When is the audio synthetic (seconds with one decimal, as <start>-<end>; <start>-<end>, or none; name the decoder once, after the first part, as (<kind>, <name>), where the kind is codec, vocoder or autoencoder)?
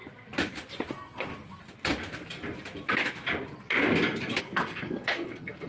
0.9-1.3 (codec, SNAC); 4.4-5.7